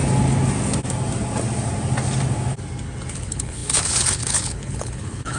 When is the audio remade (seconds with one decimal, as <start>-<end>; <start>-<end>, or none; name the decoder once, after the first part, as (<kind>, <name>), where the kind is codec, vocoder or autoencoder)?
3.1-5.4 (codec, HILCodec)